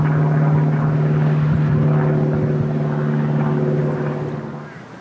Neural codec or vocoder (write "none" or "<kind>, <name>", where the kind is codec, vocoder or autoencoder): none